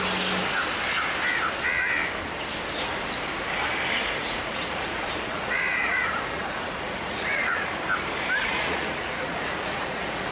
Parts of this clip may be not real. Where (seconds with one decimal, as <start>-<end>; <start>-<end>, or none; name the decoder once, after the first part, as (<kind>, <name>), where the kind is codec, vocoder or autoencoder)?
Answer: 4.2-7.8 (vocoder, Vocos); 8.4-10.3